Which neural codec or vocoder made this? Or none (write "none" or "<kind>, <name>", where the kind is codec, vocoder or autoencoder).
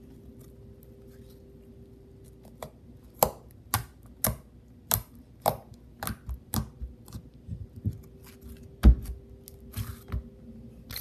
none